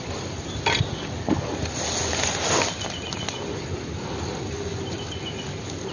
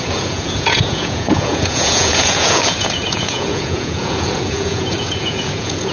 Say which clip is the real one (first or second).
first